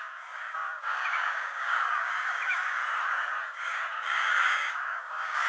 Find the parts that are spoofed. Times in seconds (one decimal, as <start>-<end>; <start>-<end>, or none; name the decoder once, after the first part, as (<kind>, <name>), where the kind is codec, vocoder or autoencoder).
0.0-2.8 (codec, DAC); 3.4-5.5